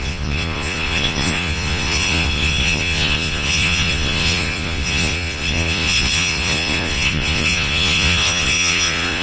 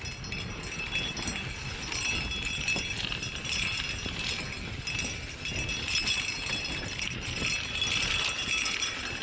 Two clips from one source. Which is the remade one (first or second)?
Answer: first